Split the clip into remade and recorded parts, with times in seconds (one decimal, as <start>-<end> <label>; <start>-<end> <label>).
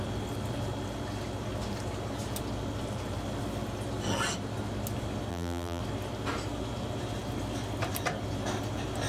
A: 0.0-5.3 recorded; 5.3-5.8 remade; 5.8-9.1 recorded